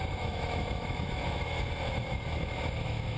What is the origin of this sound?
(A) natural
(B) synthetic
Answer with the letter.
B